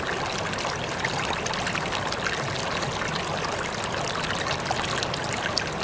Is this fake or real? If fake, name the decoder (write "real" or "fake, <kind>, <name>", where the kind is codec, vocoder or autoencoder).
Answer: real